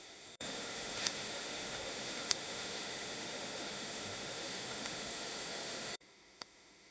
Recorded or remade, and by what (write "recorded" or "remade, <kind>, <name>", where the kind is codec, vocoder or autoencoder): remade, autoencoder, DAC-VAE